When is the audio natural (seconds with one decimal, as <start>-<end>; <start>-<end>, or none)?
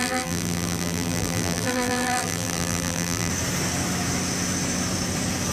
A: 3.3-5.5